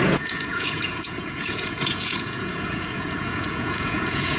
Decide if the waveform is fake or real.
fake